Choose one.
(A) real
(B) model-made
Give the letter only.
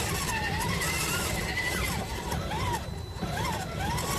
B